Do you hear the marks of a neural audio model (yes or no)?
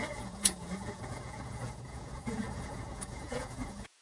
yes